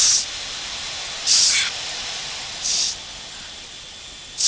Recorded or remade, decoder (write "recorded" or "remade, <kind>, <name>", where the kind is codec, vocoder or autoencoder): recorded